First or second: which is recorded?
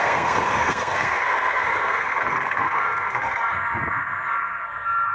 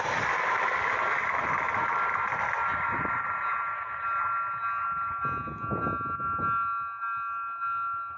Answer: second